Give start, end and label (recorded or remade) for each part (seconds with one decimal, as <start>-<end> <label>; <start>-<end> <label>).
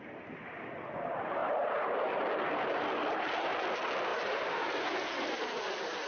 0.0-1.4 recorded; 1.4-2.3 remade; 2.3-4.1 recorded; 4.1-4.7 remade; 4.7-6.1 recorded